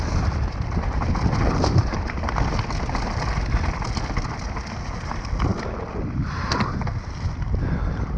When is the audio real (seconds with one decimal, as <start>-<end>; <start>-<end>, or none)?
0.0-8.2